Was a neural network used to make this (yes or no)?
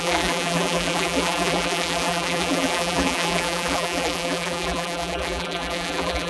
yes